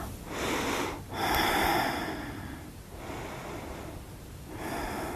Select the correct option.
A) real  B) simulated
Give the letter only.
A